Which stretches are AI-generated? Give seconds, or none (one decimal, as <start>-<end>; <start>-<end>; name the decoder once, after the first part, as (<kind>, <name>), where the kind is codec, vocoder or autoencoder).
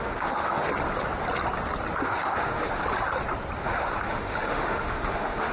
0.0-0.7 (autoencoder, DAC-VAE); 2.0-2.8; 3.6-5.5